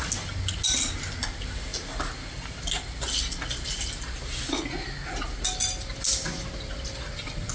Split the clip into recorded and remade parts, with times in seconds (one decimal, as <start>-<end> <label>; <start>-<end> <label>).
0.0-7.5 recorded